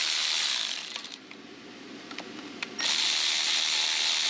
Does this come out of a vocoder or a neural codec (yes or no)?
no